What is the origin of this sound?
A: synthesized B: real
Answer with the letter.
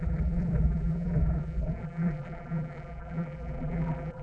A